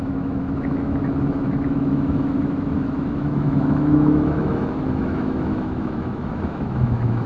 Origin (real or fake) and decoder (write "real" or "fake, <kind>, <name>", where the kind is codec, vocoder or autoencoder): fake, autoencoder, DAC-VAE